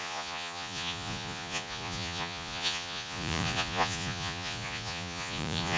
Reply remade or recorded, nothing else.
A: remade